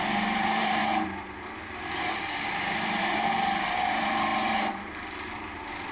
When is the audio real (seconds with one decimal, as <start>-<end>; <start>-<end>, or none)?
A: 0.8-3.0